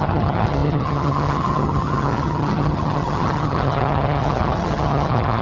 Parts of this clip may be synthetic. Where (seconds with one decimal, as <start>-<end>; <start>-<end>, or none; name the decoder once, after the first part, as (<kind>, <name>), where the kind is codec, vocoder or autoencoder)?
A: 0.0-5.4 (vocoder, HiFi-GAN)